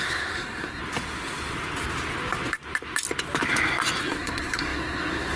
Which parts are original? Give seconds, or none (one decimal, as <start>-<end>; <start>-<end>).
0.8-4.0